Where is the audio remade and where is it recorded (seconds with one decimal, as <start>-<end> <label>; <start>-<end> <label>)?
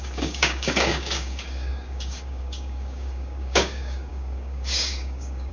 0.0-5.5 remade